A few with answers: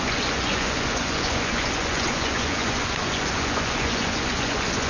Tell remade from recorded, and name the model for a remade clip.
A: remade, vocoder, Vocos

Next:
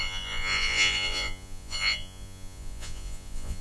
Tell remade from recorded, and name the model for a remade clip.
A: remade, vocoder, Vocos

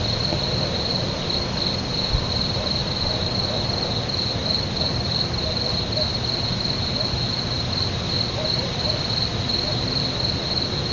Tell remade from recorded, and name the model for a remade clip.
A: recorded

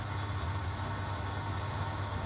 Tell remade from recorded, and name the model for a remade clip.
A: recorded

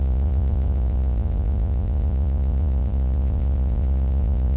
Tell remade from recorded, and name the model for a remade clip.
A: remade, vocoder, Vocos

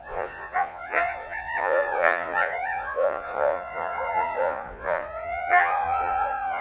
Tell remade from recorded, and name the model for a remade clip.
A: remade, vocoder, Vocos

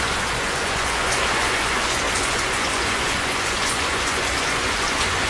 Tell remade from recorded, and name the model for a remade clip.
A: remade, vocoder, Vocos